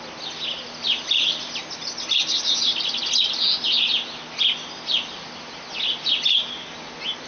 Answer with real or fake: real